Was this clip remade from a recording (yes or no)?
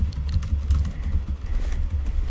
no